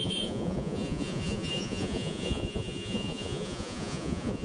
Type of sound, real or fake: fake